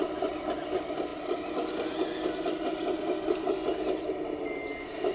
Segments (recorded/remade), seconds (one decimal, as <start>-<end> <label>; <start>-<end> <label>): 0.0-5.1 recorded